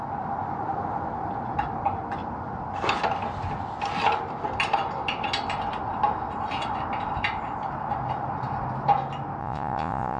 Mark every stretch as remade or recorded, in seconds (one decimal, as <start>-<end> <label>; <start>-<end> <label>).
0.0-9.4 recorded; 9.4-10.2 remade